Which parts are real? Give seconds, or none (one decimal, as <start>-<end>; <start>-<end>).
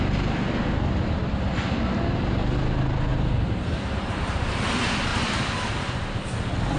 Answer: 0.0-3.1; 4.6-5.1; 6.2-6.8